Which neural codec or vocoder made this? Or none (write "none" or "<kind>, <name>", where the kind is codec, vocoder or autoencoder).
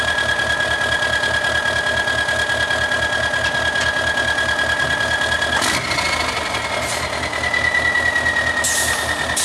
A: none